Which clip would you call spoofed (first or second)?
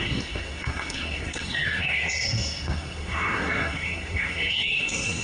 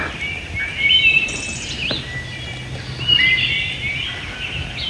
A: first